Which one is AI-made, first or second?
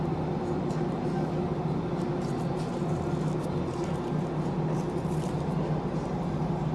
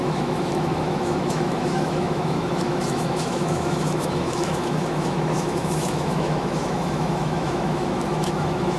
second